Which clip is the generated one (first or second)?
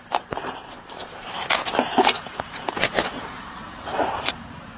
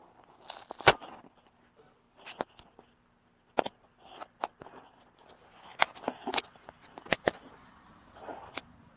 first